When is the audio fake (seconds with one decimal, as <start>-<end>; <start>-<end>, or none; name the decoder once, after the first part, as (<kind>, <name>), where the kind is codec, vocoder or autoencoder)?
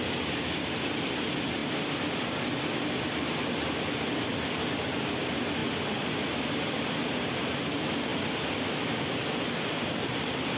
5.6-7.6 (vocoder, BigVGAN v2); 8.1-10.6